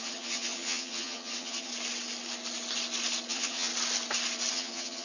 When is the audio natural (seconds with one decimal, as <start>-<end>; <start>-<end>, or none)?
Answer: 1.7-3.3; 3.7-4.5